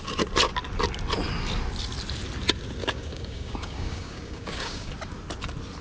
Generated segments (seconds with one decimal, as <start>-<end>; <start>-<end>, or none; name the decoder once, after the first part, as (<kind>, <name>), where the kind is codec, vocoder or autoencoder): 2.8-4.9 (codec, DAC)